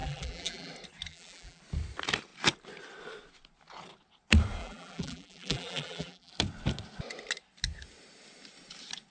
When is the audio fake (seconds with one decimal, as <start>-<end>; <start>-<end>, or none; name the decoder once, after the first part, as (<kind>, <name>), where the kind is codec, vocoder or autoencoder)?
0.0-0.7 (vocoder, BigVGAN v2); 1.1-1.6; 4.6-6.3